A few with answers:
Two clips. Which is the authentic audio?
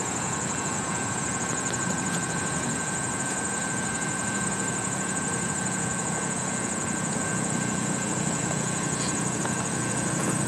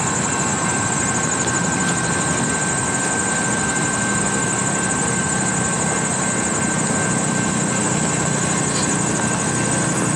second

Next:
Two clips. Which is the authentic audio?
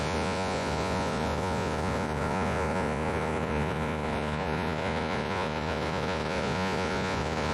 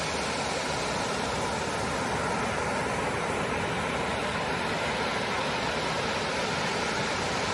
second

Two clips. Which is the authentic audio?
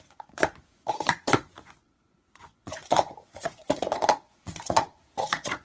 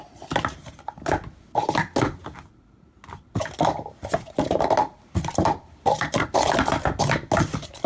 second